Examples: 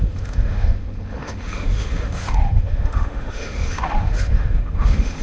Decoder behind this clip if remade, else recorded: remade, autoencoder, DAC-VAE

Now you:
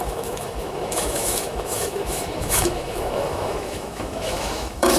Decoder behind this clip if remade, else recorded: remade, autoencoder, DAC-VAE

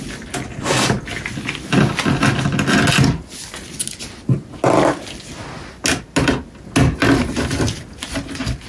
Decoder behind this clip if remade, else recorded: recorded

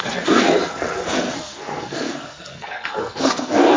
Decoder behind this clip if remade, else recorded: remade, codec, SNAC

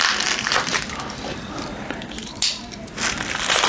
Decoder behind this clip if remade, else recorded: remade, vocoder, BigVGAN v2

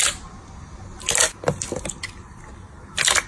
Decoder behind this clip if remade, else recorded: remade, vocoder, BigVGAN v2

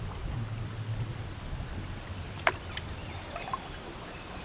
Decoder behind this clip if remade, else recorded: recorded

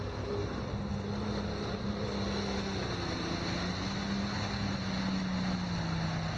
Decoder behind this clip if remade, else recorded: recorded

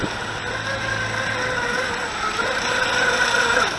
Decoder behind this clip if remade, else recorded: recorded